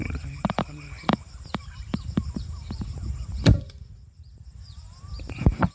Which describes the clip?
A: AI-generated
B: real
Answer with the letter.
A